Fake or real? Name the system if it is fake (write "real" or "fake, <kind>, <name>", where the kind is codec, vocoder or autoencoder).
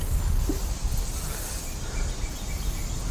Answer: real